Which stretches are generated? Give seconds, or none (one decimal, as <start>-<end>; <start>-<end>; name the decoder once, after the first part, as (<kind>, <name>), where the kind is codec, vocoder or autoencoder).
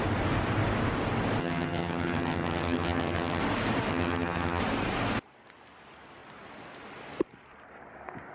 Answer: 1.4-3.4 (vocoder, HiFi-GAN); 3.9-4.6